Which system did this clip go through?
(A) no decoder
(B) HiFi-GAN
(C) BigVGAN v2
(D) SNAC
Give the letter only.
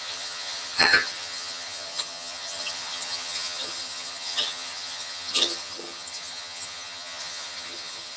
B